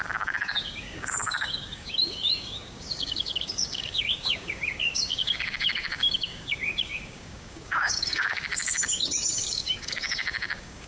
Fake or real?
fake